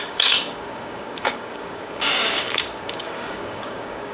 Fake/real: fake